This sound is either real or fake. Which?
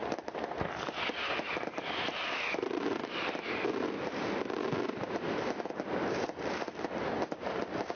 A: real